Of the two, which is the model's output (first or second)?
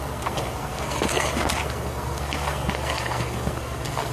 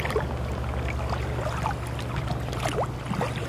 first